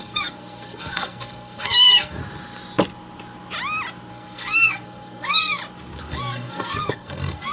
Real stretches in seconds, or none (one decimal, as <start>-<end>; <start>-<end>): 2.2-4.1; 5.6-6.1